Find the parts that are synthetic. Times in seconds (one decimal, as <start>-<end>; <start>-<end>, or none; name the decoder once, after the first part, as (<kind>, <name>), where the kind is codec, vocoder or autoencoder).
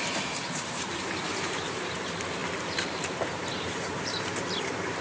0.0-5.0 (vocoder, BigVGAN v2)